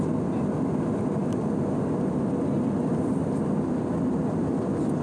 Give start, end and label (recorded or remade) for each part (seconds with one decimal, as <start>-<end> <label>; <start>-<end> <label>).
0.0-5.0 recorded